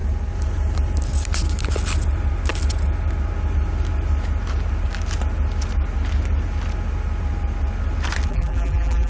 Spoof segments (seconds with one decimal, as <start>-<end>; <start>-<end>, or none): 8.3-9.1

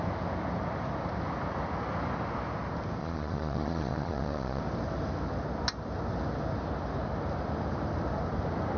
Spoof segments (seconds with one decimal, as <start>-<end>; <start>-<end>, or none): 3.0-4.6

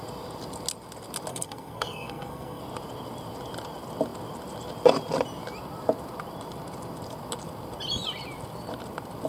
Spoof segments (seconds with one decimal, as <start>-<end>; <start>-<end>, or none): 1.3-2.6

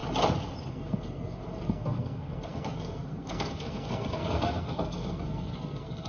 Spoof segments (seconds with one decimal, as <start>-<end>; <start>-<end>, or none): 0.7-6.1

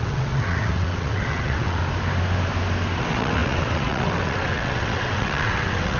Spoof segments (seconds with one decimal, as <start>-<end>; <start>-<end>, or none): 0.0-1.8; 3.0-6.0

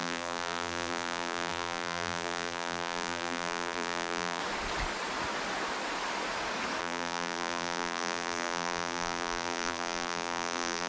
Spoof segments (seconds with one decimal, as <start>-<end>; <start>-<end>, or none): 0.0-4.4; 6.8-10.9